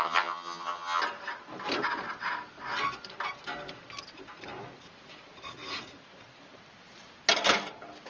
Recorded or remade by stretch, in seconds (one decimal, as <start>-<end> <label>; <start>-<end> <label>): 0.0-1.0 remade; 1.0-8.1 recorded